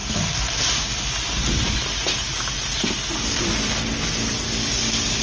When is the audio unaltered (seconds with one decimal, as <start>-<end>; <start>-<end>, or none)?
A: 0.0-5.2